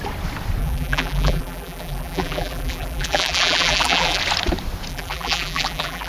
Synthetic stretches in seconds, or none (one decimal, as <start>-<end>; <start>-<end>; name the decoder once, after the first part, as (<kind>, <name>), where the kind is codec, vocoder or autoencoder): 0.6-4.2 (vocoder, BigVGAN v2); 4.9-6.1